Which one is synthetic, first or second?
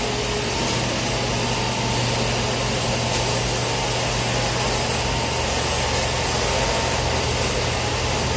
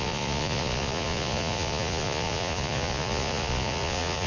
second